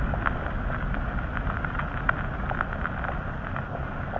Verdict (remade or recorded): recorded